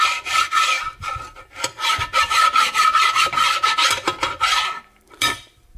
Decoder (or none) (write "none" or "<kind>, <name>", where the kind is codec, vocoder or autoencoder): vocoder, BigVGAN v2